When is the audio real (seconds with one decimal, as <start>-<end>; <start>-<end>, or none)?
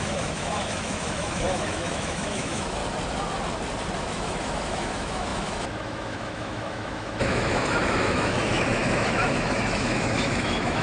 2.8-4.0